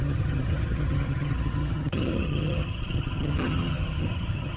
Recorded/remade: remade